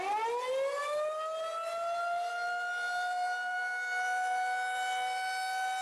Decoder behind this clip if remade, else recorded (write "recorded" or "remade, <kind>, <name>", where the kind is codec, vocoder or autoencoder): recorded